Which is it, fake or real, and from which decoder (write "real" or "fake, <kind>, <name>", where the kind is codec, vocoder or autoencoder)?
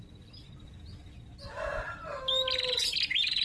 real